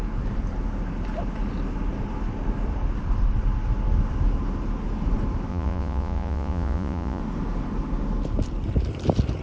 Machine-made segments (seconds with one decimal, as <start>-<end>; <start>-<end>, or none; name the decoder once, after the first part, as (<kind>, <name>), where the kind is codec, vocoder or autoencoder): 5.5-7.2 (vocoder, Vocos)